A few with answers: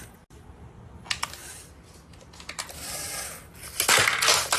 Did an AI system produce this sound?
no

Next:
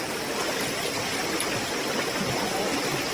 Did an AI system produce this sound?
no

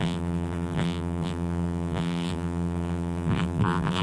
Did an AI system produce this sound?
yes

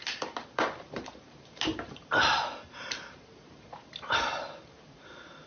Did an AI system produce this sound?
yes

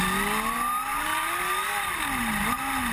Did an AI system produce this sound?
no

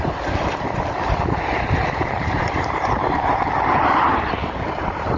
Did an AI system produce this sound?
yes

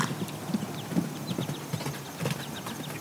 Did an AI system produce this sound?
no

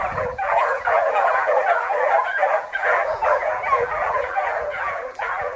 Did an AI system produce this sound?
yes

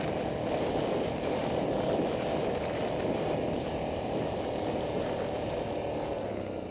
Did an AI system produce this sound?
no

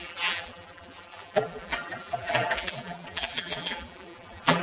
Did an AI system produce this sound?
yes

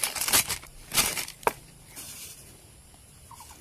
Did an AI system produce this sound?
yes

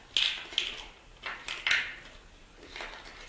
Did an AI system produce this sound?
no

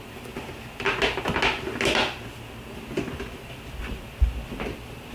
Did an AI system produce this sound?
no